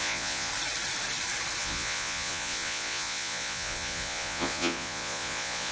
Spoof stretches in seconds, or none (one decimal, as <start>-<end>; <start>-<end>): 0.0-0.5; 1.6-5.7

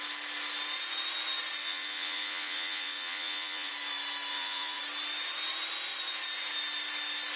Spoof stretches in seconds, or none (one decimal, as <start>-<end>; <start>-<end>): 1.6-3.7; 4.3-4.8

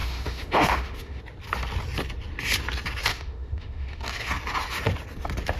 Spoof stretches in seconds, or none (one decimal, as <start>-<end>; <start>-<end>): 0.0-1.2; 3.1-4.3